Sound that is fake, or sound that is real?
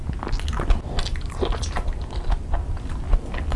real